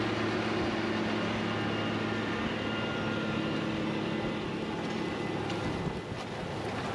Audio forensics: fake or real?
real